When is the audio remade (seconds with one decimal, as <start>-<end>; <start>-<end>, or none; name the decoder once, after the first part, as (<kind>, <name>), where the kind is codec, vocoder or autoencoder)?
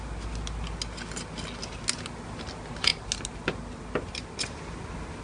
none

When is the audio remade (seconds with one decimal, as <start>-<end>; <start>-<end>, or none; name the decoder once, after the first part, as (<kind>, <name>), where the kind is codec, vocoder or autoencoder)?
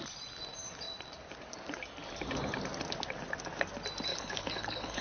4.1-5.0 (codec, HILCodec)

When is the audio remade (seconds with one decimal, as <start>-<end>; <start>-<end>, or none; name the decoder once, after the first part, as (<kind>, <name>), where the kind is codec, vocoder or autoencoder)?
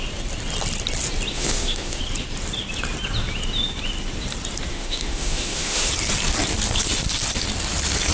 1.3-2.0 (autoencoder, DAC-VAE); 4.7-5.9